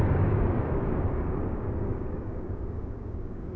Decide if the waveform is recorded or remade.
remade